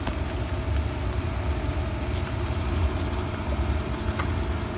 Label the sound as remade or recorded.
recorded